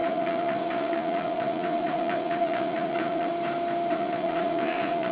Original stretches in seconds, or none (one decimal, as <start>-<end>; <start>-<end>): 3.3-3.9